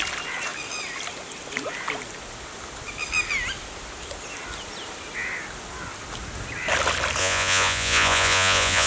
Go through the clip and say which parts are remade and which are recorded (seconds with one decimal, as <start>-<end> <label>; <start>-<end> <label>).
0.0-7.2 recorded; 7.2-8.9 remade